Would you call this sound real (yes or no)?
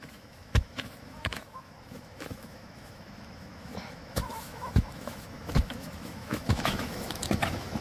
no